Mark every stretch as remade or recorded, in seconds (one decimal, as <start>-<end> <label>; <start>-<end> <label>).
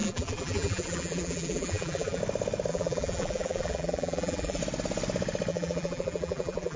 0.0-2.2 remade; 2.2-2.7 recorded; 2.7-4.6 remade; 4.6-5.5 recorded; 5.5-6.8 remade